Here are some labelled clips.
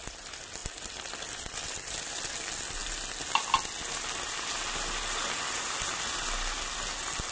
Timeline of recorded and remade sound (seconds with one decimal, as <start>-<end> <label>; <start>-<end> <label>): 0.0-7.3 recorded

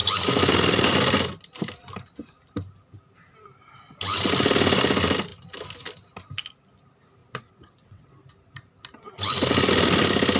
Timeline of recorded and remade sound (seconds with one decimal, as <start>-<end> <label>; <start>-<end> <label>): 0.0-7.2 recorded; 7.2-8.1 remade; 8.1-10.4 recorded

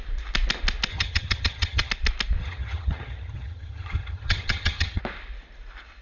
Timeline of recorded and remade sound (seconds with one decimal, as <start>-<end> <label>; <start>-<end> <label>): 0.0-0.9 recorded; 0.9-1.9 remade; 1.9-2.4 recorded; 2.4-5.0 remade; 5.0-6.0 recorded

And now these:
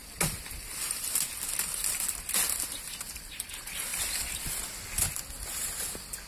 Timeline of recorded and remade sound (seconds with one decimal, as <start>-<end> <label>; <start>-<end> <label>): 0.0-3.5 recorded; 3.5-3.9 remade; 3.9-6.3 recorded

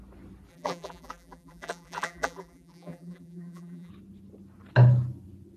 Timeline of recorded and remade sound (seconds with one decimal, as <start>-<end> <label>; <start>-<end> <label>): 0.0-0.5 recorded; 0.5-3.9 remade; 3.9-5.6 recorded

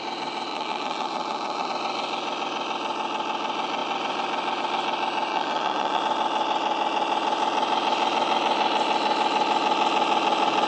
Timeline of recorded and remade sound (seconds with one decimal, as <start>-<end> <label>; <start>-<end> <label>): 0.0-0.5 recorded; 0.5-1.7 remade; 1.7-5.3 recorded; 5.3-6.0 remade; 6.0-10.7 recorded

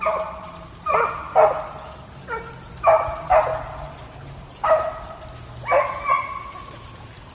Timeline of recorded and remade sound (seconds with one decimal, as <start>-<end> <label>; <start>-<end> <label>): 0.0-7.3 recorded